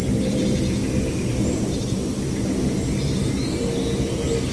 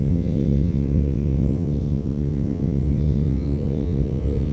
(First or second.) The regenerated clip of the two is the second